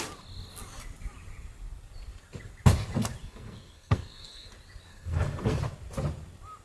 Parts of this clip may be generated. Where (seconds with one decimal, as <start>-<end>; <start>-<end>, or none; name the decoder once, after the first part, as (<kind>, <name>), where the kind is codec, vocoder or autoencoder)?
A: 3.2-4.5 (codec, SNAC); 4.9-5.6